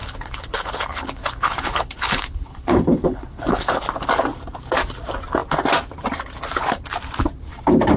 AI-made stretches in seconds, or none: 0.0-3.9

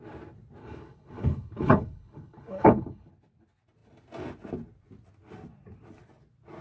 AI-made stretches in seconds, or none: 0.6-3.1

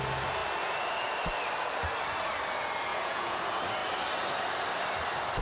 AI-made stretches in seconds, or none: 2.9-3.4

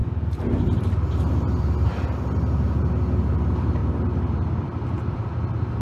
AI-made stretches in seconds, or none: none